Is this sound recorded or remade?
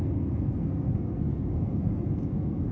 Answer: remade